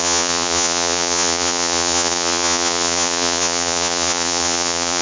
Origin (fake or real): fake